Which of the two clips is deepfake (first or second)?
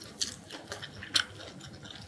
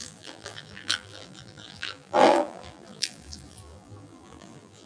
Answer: second